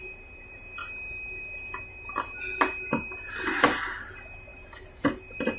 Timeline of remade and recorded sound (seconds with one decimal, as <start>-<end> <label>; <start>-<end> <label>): 0.0-5.6 recorded